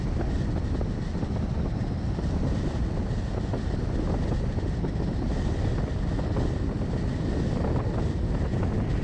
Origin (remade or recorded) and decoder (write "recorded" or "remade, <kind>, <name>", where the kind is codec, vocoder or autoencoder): recorded